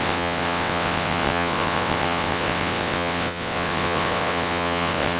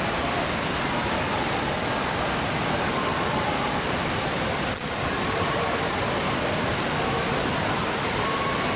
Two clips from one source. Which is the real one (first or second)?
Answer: second